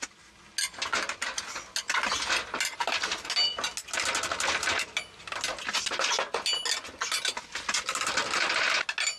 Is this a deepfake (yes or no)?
no